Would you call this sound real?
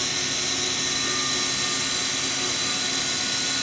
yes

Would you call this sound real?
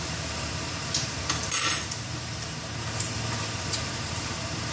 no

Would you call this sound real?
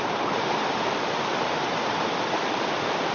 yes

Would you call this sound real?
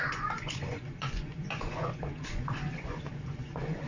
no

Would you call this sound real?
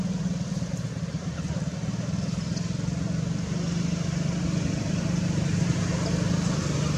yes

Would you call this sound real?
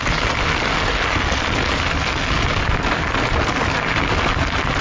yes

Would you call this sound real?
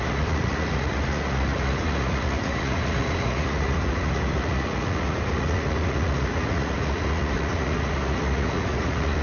no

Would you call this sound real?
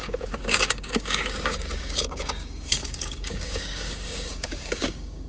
no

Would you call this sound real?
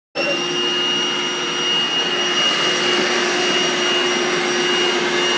yes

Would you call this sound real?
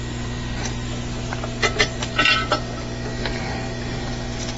yes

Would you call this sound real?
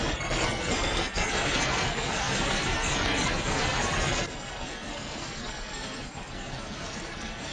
no